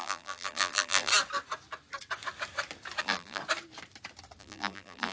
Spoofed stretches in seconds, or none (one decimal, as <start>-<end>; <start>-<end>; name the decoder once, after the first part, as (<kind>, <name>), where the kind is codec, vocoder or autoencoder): 0.0-1.1 (vocoder, BigVGAN v2); 3.0-3.4; 4.4-5.1